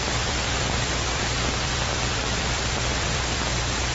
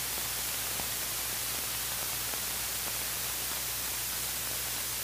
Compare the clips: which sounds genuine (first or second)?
second